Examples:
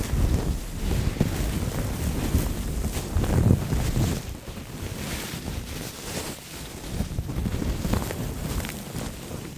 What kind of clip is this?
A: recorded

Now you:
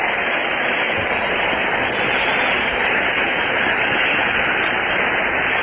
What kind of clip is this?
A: recorded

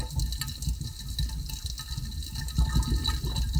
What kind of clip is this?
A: recorded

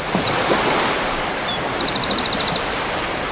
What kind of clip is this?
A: recorded